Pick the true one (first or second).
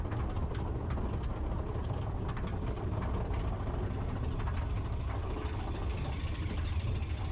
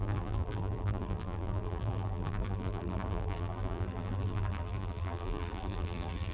first